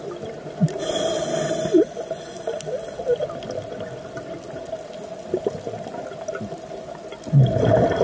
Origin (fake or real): real